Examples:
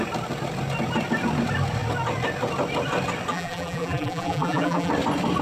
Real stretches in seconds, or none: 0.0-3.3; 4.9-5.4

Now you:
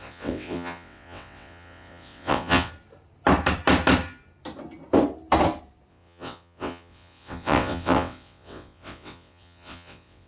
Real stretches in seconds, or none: 2.7-5.9

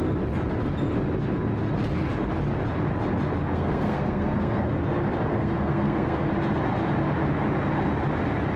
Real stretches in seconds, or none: 0.0-3.5; 4.8-5.3; 6.3-8.6

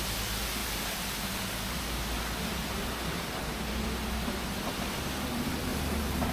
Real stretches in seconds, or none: 0.0-0.6; 3.7-5.7

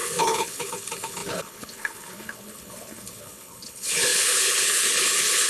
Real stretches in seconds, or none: none

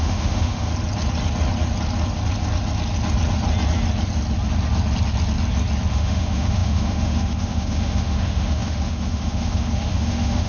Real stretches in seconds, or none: 0.7-5.9

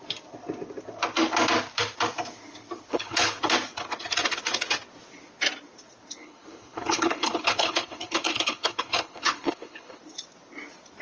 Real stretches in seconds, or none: 0.0-2.9; 3.4-6.2; 10.0-11.0